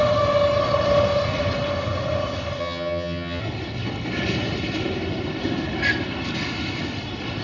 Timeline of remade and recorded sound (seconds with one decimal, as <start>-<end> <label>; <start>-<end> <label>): 0.0-2.6 recorded; 2.6-3.4 remade; 3.4-7.4 recorded